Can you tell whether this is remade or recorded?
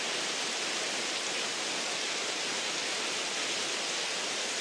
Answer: recorded